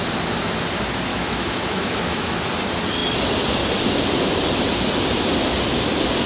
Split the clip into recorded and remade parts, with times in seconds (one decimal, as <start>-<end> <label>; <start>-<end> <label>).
0.0-1.1 recorded; 1.1-2.3 remade; 2.3-6.3 recorded